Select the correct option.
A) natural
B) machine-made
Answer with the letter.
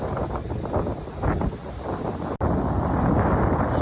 A